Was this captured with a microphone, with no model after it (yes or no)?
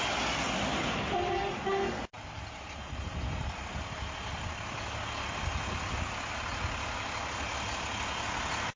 yes